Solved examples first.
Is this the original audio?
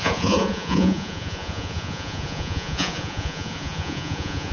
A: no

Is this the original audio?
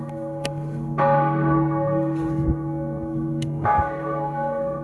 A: no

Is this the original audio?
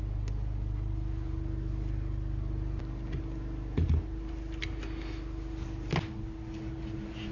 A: yes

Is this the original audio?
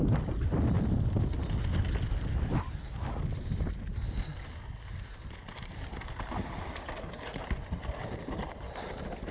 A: yes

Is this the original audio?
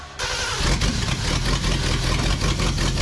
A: yes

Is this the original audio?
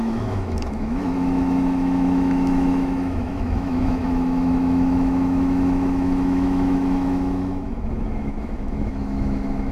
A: no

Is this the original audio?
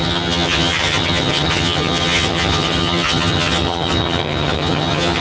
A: no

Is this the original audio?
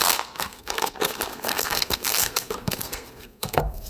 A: no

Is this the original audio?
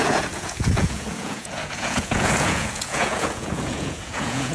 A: no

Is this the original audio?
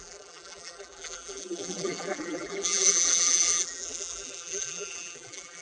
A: no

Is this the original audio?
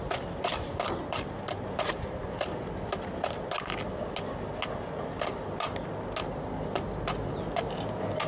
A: yes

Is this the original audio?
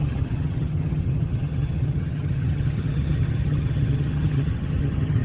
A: no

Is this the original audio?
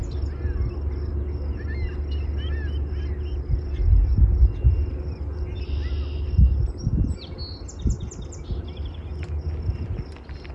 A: yes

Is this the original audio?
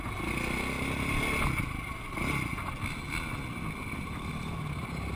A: yes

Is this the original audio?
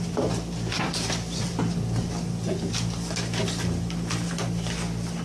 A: yes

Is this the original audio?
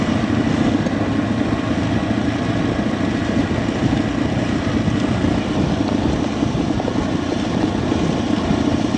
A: yes